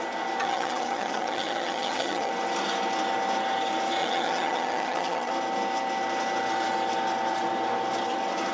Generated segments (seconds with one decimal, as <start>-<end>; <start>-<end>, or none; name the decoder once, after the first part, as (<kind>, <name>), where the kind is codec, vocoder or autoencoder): 0.4-2.3 (vocoder, HiFi-GAN); 4.0-5.3